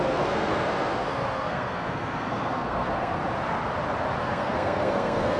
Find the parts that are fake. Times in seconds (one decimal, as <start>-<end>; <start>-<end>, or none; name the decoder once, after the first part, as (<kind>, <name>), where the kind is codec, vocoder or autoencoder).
0.0-3.2 (codec, SNAC); 4.2-5.4